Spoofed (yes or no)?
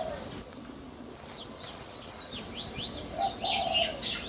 no